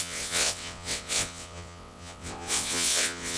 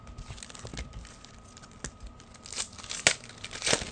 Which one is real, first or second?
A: second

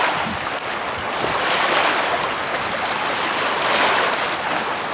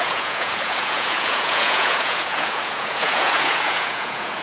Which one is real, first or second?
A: first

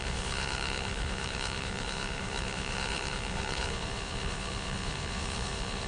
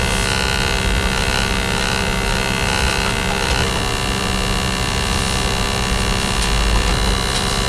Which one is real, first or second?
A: second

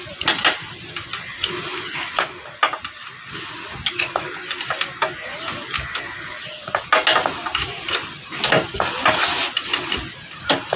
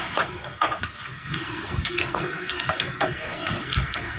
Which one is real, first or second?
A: first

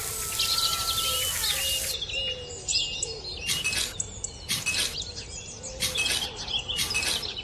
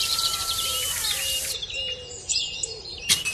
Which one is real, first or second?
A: first